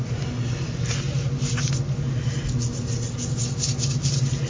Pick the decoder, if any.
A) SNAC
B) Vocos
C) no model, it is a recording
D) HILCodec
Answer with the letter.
C